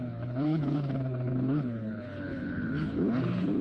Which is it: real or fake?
fake